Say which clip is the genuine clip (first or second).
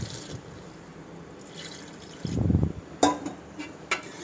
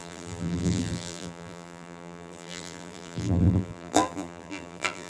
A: first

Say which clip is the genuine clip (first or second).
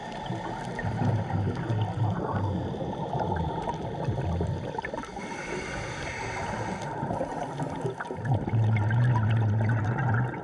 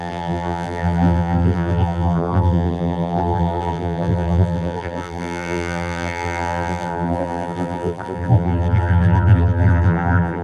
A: first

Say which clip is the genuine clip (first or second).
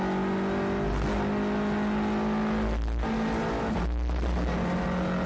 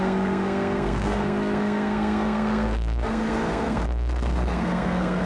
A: first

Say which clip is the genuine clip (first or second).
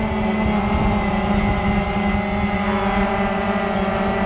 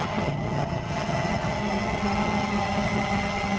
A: first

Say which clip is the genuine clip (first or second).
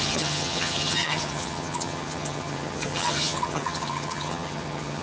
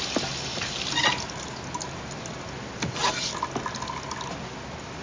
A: second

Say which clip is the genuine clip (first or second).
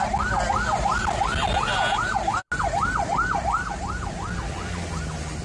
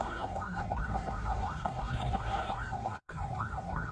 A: first